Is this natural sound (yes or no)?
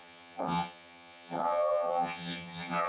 no